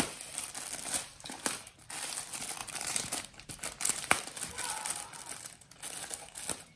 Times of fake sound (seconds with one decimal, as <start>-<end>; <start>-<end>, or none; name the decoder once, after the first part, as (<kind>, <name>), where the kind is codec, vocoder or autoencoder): 2.6-4.1 (vocoder, BigVGAN v2)

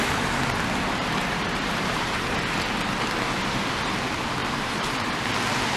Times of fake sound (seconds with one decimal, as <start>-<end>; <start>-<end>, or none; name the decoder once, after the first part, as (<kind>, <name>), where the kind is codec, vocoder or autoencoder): 1.0-2.4 (vocoder, BigVGAN v2); 4.4-5.0

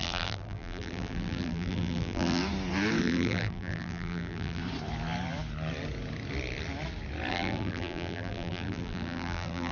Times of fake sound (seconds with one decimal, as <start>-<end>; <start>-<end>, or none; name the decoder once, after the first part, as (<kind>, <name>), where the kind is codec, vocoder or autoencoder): 0.0-2.4 (vocoder, BigVGAN v2); 3.0-4.6; 7.3-9.7

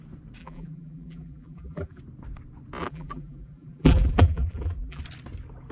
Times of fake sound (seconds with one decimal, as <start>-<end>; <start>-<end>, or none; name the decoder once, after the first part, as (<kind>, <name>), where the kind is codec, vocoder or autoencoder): 0.4-2.0 (vocoder, BigVGAN v2); 2.8-5.0

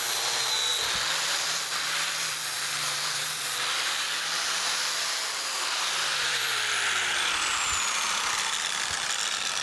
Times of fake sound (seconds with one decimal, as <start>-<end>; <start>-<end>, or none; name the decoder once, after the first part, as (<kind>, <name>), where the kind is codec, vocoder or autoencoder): 0.0-9.6 (vocoder, BigVGAN v2)